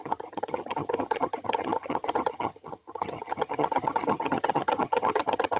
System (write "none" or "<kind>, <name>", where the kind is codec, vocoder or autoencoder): vocoder, HiFi-GAN